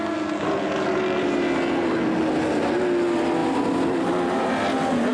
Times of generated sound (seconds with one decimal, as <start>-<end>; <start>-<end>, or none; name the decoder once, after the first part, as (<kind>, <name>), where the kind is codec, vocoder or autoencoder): none